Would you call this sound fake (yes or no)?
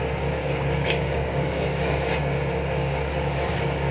yes